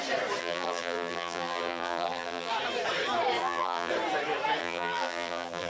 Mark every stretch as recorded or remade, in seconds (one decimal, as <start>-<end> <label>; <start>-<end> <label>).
0.0-0.4 recorded; 0.4-2.5 remade; 2.5-3.4 recorded; 3.4-3.9 remade; 3.9-4.6 recorded; 4.6-5.7 remade